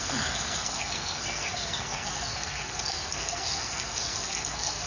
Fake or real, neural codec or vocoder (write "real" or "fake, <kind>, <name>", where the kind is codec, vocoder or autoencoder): fake, codec, SNAC